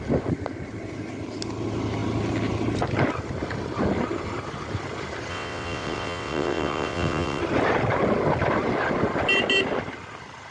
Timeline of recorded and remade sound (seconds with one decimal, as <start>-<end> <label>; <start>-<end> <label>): 0.0-5.3 recorded; 5.3-7.4 remade; 7.4-10.5 recorded